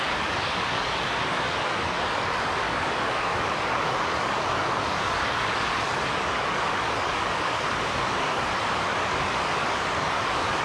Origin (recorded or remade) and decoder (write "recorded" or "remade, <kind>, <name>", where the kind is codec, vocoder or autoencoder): remade, codec, DAC